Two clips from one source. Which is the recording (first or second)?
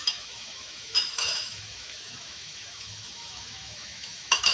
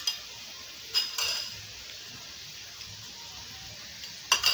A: second